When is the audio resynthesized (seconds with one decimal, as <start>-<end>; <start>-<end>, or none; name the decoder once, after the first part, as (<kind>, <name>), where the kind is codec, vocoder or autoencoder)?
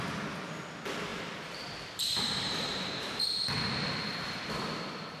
1.1-1.6 (vocoder, BigVGAN v2); 2.1-3.5